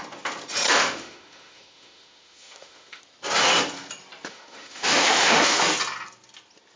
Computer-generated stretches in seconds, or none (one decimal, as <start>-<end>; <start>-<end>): 0.8-3.0; 4.3-5.6